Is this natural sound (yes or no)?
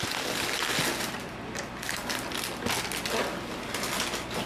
yes